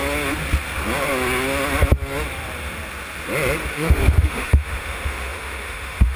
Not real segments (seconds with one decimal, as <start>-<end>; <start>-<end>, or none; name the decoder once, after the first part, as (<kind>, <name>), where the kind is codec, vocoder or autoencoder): 3.7-6.2 (autoencoder, DAC-VAE)